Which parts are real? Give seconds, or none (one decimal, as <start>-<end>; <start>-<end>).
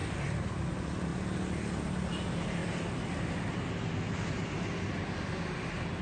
0.0-6.0